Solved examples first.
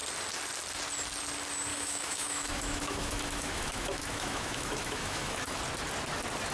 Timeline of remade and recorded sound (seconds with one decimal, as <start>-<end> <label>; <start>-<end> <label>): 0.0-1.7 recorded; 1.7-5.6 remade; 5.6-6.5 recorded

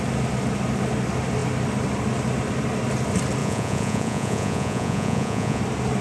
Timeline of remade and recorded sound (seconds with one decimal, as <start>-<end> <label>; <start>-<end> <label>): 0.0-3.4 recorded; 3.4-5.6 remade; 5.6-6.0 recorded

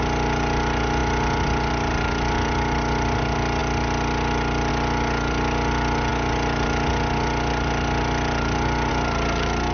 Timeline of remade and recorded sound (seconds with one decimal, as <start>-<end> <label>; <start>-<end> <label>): 0.0-9.7 recorded